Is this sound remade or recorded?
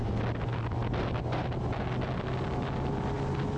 recorded